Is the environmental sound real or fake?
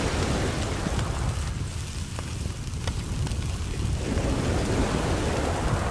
real